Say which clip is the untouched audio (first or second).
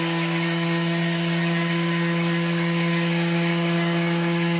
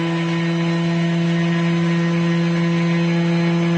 second